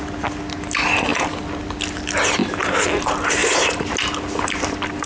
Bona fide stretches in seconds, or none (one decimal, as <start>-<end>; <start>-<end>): 0.0-5.1